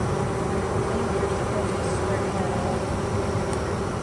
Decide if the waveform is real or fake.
real